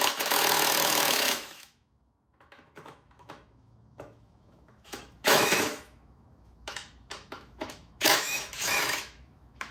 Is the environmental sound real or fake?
fake